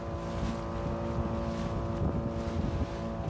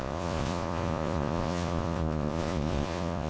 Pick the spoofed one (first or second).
second